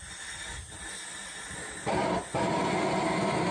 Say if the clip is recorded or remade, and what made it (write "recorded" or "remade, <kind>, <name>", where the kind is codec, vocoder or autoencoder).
recorded